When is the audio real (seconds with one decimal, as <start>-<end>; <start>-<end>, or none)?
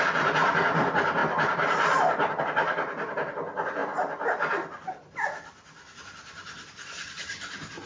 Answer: 0.0-7.9